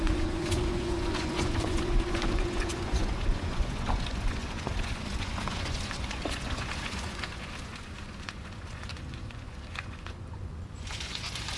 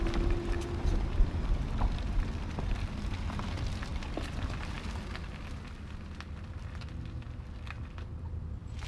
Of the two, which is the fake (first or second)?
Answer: first